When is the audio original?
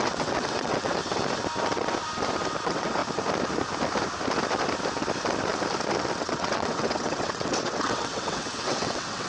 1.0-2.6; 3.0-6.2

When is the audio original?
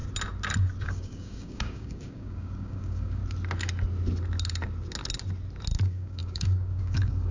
0.0-0.8; 3.2-5.8